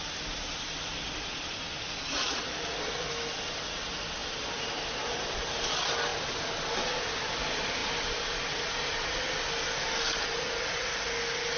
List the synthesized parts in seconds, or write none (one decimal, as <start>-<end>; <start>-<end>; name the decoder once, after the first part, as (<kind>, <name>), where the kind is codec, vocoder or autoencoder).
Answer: none